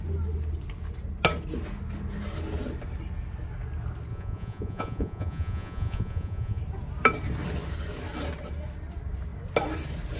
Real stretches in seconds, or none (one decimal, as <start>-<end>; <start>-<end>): 0.0-4.1; 6.6-10.2